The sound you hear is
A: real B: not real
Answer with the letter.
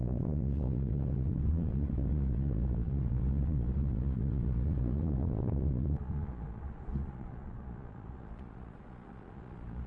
B